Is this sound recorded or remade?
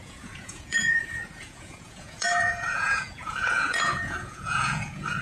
remade